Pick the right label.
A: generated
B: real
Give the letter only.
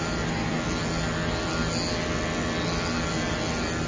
B